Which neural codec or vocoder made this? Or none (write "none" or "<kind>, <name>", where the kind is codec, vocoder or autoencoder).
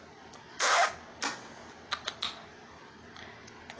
none